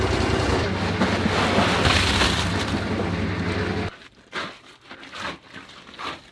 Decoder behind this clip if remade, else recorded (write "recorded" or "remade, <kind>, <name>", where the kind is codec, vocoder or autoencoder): recorded